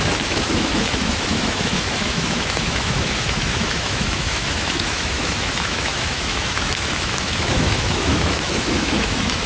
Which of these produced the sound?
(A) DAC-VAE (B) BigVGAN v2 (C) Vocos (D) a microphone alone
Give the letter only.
A